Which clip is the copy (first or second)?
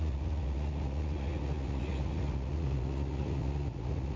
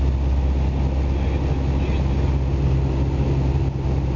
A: first